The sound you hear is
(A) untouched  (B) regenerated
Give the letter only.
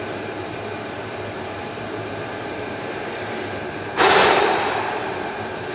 B